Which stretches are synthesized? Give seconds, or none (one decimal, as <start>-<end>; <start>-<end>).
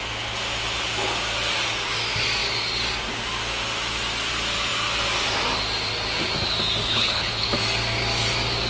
6.8-7.5